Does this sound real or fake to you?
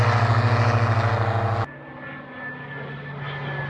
real